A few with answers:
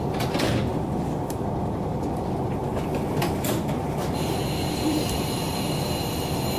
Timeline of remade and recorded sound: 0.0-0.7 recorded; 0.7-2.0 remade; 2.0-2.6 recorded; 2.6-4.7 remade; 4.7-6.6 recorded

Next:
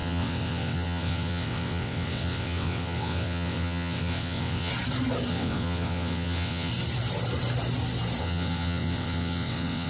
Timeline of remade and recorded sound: 0.0-4.7 remade; 4.7-5.3 recorded; 5.3-6.7 remade; 6.7-8.2 recorded; 8.2-9.9 remade

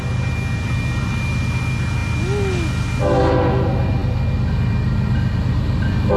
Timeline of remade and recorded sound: 0.0-6.2 recorded

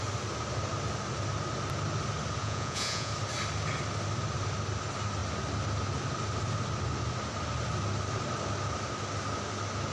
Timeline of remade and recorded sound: 0.0-2.4 recorded; 2.4-3.1 remade; 3.1-9.9 recorded

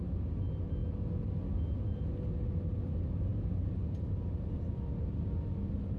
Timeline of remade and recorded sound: 0.0-6.0 recorded

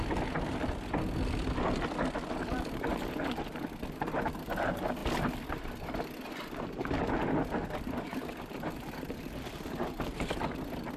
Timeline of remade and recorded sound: 0.0-2.9 recorded; 2.9-3.6 remade; 3.6-5.0 recorded; 5.0-9.6 remade; 9.6-11.0 recorded

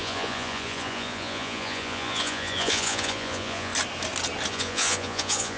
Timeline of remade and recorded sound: 0.0-3.7 remade; 3.7-4.5 recorded; 4.5-5.6 remade